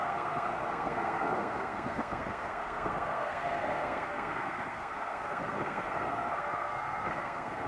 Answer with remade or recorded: remade